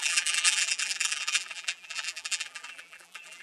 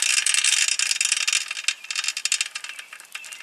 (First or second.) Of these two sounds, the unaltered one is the second